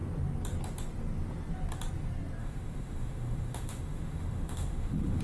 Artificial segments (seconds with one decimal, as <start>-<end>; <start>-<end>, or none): 2.4-5.2